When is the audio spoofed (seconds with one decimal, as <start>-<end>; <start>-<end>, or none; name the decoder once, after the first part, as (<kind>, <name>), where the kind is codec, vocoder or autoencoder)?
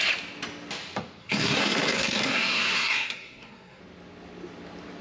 1.2-3.8 (codec, SNAC)